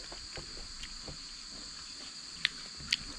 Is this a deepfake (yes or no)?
no